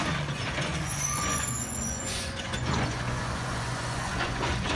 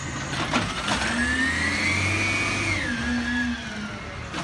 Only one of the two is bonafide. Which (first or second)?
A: second